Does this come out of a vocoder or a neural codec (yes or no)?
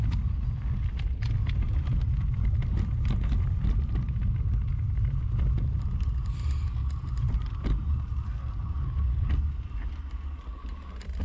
no